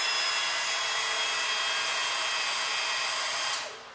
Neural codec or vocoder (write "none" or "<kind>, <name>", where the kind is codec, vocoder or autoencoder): none